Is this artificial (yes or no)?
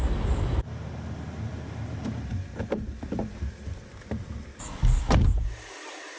no